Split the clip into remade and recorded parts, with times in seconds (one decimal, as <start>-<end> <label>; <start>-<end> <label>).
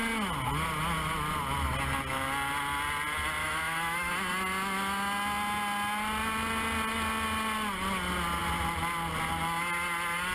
0.0-3.4 recorded; 3.4-4.1 remade; 4.1-10.3 recorded